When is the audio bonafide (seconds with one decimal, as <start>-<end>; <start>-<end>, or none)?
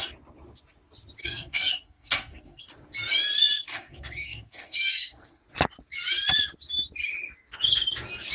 0.0-1.2; 2.6-3.7; 5.4-8.3